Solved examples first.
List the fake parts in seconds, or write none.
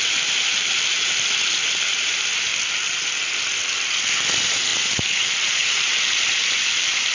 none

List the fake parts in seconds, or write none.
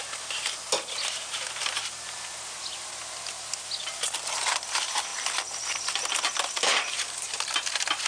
none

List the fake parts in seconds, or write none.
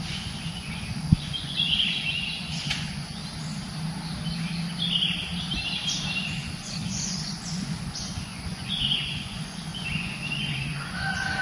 0.0-3.2 (vocoder, Vocos); 6.3-11.4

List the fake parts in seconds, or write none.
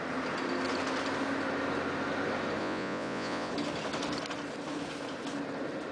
2.6-3.5 (vocoder, Vocos)